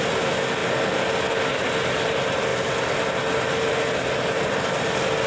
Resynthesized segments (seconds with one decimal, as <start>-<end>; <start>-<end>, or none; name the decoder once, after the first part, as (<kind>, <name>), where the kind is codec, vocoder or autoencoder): none